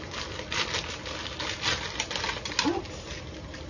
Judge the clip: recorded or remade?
recorded